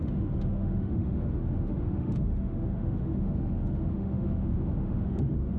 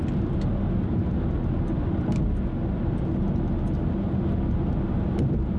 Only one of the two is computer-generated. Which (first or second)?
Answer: first